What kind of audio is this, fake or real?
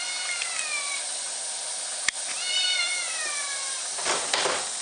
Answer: real